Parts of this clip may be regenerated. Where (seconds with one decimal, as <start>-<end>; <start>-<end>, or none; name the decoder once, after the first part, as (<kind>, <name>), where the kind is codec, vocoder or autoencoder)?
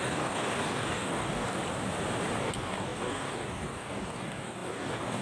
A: 0.0-1.6 (codec, DAC); 2.4-5.2